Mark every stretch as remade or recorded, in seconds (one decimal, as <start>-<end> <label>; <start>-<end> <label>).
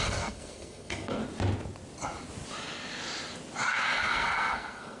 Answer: 0.0-1.2 remade; 1.2-3.7 recorded; 3.7-5.0 remade